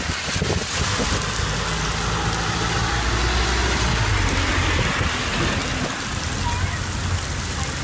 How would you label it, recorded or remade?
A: recorded